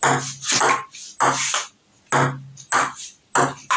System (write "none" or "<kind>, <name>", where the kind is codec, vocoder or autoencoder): none